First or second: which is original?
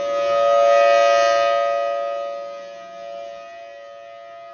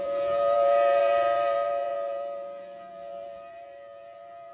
first